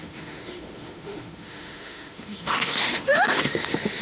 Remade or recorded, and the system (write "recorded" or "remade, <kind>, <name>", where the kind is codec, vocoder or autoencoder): remade, autoencoder, DAC-VAE